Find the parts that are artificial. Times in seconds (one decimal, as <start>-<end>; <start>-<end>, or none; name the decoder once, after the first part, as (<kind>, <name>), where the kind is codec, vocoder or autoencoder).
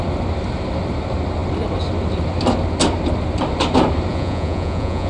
4.1-5.1 (vocoder, Vocos)